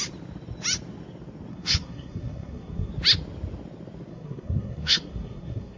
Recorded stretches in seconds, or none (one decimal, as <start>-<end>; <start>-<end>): 0.0-1.5; 2.9-4.1